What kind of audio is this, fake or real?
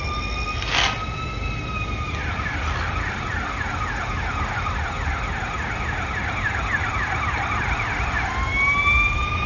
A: real